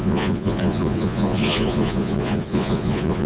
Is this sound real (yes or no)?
no